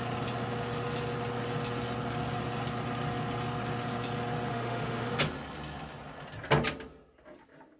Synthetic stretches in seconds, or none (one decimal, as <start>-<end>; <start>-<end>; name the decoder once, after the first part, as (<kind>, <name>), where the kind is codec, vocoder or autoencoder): 4.5-5.1 (autoencoder, DAC-VAE)